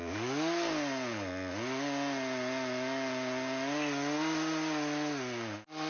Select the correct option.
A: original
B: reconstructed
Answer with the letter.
A